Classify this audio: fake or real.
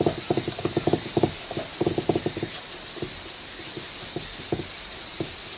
real